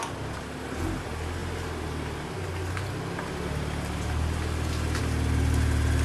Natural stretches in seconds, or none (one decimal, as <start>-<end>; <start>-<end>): 0.0-6.0